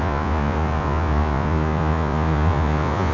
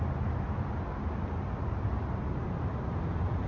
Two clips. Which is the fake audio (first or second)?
first